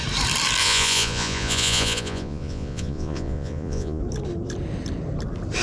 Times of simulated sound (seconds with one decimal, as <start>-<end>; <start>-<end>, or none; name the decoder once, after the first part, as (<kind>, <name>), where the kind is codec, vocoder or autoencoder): 0.6-4.0 (vocoder, Vocos)